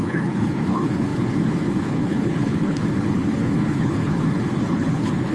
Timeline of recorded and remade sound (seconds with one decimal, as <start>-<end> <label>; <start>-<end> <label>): 0.0-5.3 remade